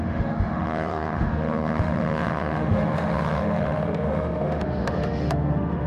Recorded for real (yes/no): no